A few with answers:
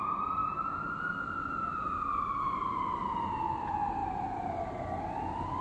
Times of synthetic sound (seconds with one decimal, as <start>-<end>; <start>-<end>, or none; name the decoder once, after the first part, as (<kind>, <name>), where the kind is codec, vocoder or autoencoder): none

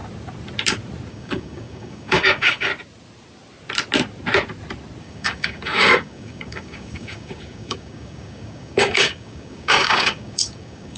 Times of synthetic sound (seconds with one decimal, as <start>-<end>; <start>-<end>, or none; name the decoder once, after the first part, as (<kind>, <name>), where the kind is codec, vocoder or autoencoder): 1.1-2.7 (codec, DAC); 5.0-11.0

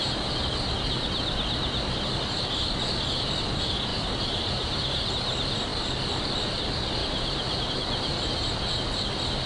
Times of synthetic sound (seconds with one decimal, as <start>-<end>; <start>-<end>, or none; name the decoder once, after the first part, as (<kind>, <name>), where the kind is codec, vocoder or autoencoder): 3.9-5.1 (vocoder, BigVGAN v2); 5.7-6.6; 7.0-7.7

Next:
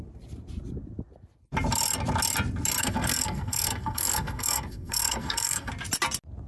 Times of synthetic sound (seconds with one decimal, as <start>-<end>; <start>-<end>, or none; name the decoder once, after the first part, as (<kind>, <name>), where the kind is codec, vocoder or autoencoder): 2.8-5.7 (codec, SNAC)

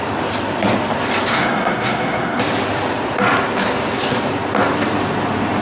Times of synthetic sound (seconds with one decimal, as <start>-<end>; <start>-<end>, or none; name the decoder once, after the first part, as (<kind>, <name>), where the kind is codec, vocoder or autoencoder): 1.3-2.4 (codec, SNAC)